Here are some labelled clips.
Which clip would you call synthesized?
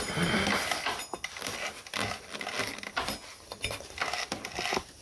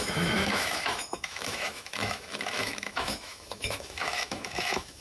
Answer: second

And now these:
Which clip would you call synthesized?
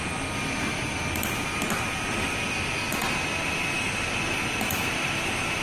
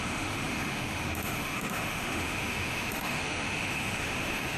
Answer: second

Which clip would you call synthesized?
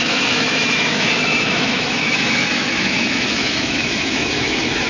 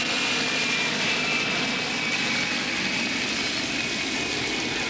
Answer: first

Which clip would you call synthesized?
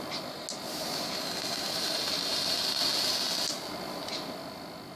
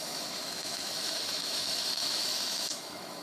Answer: second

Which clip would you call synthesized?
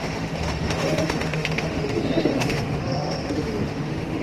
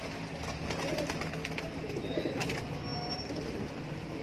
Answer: first